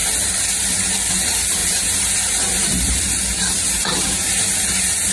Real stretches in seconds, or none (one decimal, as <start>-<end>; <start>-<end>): 0.0-1.1